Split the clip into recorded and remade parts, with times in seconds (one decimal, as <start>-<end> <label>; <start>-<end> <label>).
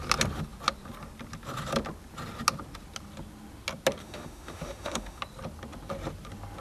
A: 0.0-4.0 recorded; 4.0-5.2 remade; 5.2-6.6 recorded